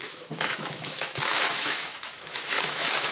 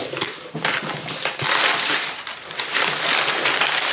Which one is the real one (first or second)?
second